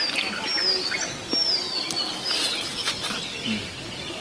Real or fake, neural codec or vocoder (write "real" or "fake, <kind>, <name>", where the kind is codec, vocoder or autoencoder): real